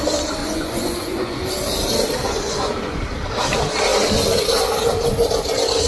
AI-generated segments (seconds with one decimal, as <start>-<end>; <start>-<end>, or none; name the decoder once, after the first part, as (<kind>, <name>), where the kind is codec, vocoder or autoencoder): 0.4-1.5 (vocoder, Vocos); 2.2-3.0